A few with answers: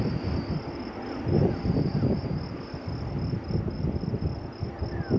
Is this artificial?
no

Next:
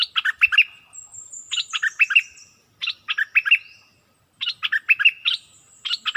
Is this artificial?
no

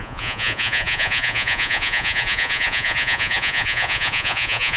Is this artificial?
yes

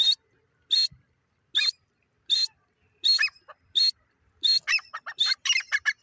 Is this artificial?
no